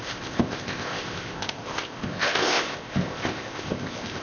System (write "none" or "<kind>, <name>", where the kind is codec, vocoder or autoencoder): codec, ZipCodec